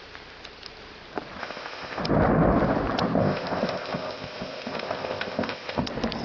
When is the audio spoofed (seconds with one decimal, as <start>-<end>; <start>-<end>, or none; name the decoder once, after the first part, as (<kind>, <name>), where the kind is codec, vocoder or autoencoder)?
1.4-2.0 (codec, ZipCodec); 3.2-5.8